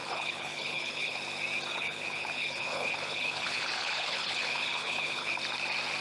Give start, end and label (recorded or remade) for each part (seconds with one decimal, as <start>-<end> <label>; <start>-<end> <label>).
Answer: 0.0-1.2 remade; 1.2-1.7 recorded; 1.7-5.3 remade; 5.3-6.0 recorded